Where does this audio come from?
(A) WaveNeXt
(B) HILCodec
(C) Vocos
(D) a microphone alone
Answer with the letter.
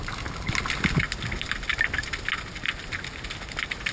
D